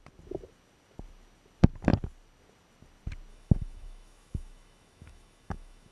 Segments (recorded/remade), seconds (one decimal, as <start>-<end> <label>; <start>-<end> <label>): 0.0-3.3 recorded; 3.3-5.9 remade